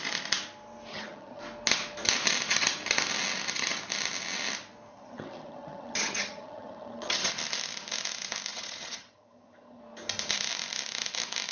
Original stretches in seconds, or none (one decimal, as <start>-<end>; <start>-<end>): 0.0-0.9; 1.4-4.9; 7.3-8.5; 9.8-11.5